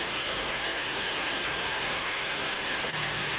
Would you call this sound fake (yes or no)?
yes